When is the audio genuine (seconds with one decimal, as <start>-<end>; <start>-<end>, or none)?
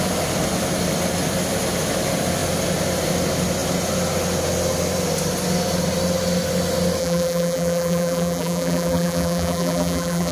0.0-7.0